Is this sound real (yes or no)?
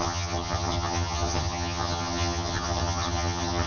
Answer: no